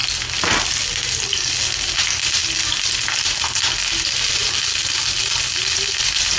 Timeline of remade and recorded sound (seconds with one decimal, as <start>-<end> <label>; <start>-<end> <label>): 0.0-6.4 recorded